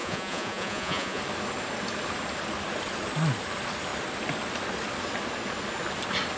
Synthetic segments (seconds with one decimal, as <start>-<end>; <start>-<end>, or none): 0.0-1.2